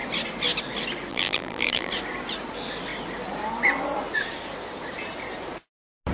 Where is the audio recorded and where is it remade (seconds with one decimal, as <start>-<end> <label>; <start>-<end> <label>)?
0.0-1.1 recorded; 1.1-1.9 remade; 1.9-6.1 recorded